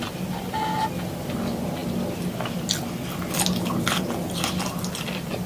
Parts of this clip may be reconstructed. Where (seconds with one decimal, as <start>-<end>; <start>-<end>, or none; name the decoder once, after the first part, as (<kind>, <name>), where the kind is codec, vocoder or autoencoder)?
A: none